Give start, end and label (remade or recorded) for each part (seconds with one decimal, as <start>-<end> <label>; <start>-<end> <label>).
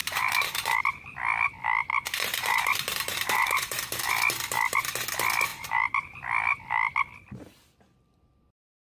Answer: 0.0-0.8 remade; 0.8-1.9 recorded; 1.9-4.1 remade; 4.1-5.5 recorded; 5.5-6.2 remade; 6.2-8.9 recorded